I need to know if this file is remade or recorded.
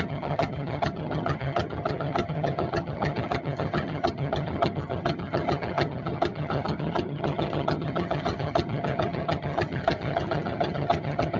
remade